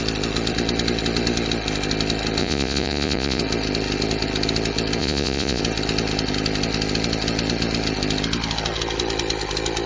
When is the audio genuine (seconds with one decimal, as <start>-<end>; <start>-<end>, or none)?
0.0-2.4; 3.4-5.0; 5.6-9.9